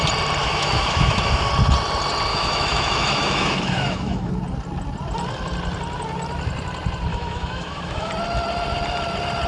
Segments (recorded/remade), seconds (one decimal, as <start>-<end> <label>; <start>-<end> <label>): 0.0-0.4 recorded; 0.4-1.5 remade; 1.5-2.3 recorded; 2.3-4.3 remade; 4.3-7.1 recorded; 7.1-8.1 remade; 8.1-9.5 recorded